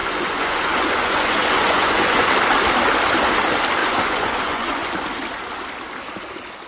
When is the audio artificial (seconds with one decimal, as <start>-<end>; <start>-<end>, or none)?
0.0-2.3; 3.8-4.9